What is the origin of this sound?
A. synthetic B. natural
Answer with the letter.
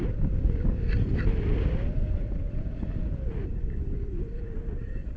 B